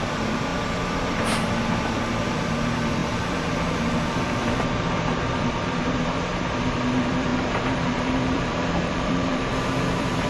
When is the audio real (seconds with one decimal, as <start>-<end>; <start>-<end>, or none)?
none